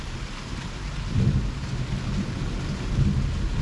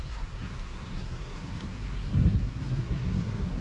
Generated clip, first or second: second